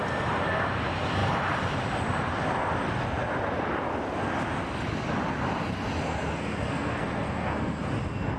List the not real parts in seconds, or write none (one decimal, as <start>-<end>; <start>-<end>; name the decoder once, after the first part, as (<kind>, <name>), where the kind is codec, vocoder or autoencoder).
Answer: 6.1-7.9 (codec, SNAC)